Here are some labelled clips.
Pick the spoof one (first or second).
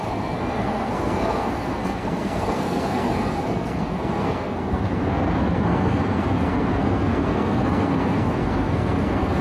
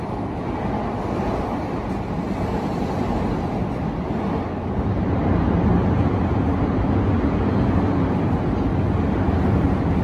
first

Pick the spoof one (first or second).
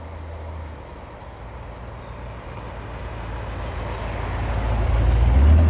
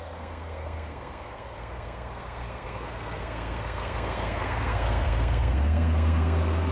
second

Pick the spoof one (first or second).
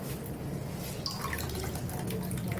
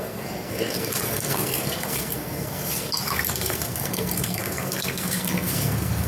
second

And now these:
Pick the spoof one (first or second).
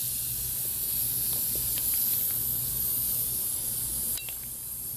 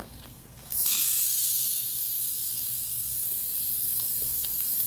second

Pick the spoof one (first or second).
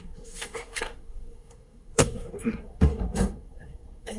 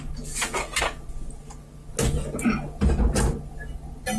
first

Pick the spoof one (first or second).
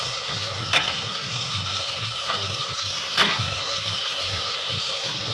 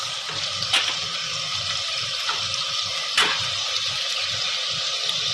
first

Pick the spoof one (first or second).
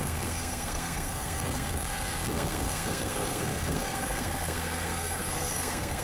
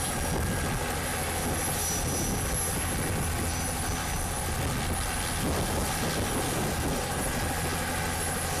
first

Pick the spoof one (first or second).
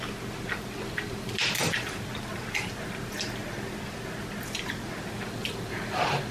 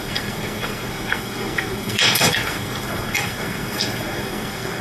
second